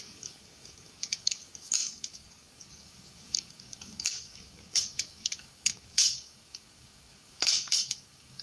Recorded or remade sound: remade